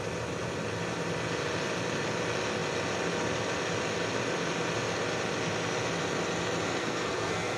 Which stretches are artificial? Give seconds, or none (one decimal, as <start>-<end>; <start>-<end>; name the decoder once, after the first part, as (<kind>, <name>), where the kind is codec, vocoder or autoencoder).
6.8-7.6 (codec, SNAC)

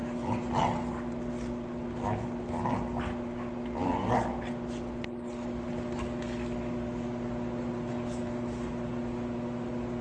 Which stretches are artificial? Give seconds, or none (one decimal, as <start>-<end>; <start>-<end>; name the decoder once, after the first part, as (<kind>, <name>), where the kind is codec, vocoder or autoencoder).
none

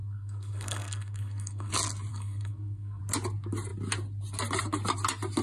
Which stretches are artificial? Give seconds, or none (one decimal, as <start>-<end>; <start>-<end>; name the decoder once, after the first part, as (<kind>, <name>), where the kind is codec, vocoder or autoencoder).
0.0-1.7 (codec, SNAC); 2.1-3.0

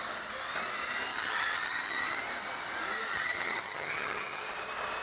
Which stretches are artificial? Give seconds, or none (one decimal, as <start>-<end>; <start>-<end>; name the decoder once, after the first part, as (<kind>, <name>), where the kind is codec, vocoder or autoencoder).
1.1-2.2 (vocoder, HiFi-GAN); 3.1-4.5

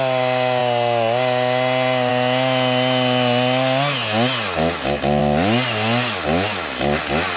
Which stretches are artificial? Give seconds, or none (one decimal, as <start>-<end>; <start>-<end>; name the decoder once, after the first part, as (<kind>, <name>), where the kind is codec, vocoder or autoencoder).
none

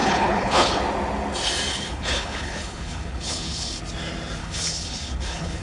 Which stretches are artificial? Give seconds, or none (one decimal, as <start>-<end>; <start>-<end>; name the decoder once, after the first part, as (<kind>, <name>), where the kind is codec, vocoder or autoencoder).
0.0-0.8 (codec, HILCodec); 1.7-3.8; 4.4-5.6

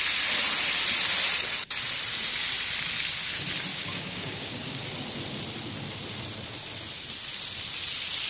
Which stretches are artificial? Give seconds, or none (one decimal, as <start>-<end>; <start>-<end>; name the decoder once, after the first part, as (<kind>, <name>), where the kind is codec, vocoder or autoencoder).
3.7-4.8 (codec, DAC)